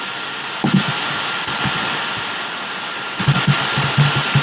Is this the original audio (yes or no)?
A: yes